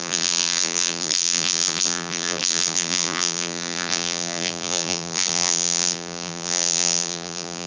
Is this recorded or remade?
remade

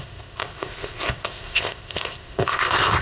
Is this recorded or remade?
remade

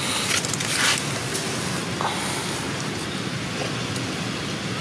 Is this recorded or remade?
recorded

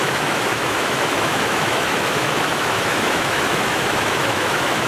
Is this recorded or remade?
remade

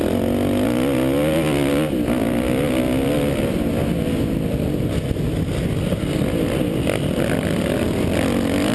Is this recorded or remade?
recorded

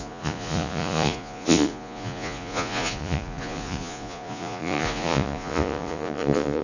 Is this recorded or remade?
remade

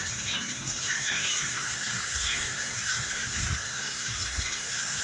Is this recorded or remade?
remade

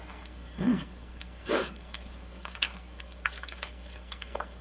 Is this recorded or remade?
remade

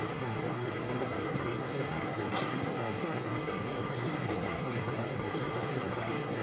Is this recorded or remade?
remade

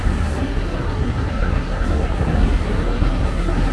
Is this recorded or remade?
remade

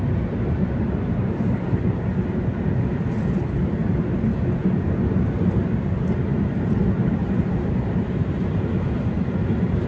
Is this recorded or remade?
recorded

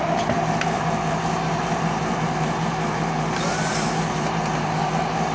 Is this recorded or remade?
remade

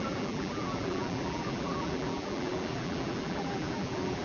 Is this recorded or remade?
remade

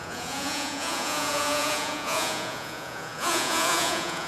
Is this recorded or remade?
remade